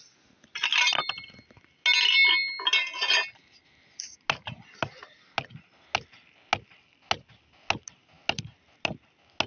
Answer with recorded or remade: recorded